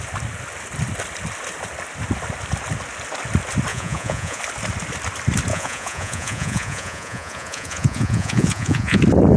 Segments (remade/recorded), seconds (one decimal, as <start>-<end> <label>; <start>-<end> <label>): 0.0-3.7 recorded; 3.7-4.4 remade; 4.4-5.5 recorded; 5.5-9.0 remade; 9.0-9.4 recorded